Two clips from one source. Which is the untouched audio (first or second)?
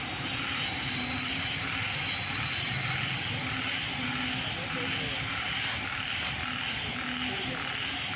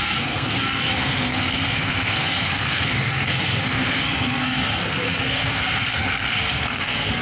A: first